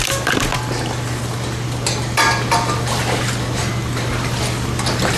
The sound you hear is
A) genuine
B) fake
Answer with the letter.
B